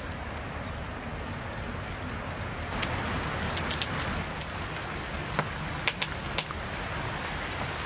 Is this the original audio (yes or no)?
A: yes